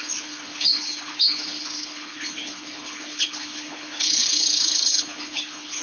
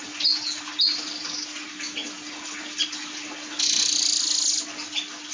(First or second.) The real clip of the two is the second